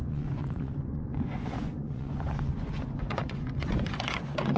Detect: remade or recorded remade